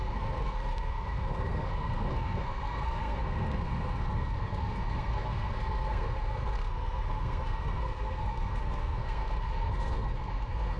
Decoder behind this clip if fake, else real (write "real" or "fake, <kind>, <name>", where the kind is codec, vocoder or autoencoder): fake, codec, SNAC